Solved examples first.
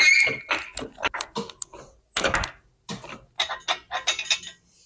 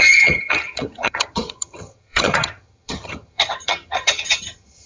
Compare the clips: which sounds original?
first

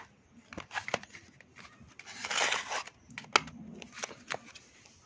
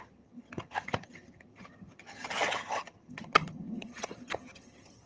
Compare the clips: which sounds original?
first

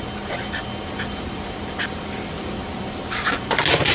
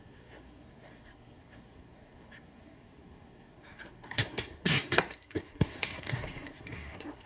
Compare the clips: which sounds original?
first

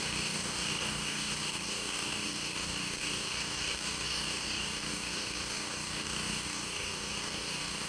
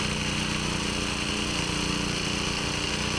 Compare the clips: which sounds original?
second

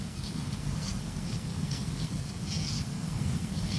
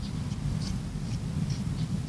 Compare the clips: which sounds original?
second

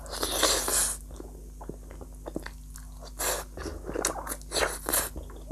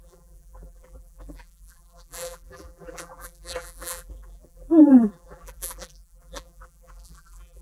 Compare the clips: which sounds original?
first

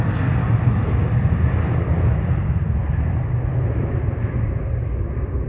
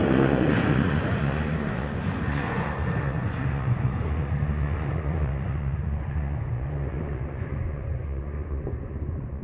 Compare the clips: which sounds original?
first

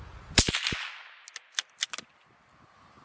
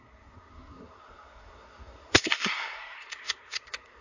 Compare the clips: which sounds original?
first